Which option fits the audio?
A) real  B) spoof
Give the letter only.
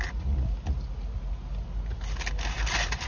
A